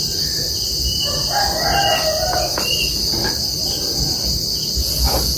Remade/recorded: recorded